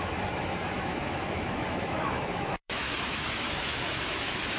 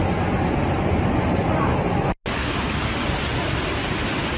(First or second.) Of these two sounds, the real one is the second